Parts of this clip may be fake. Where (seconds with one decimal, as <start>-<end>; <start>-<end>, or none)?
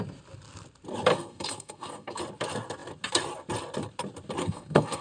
1.1-2.2; 4.4-5.0